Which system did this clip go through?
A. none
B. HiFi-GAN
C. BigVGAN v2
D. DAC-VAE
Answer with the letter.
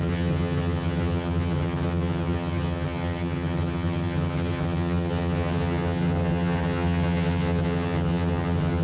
B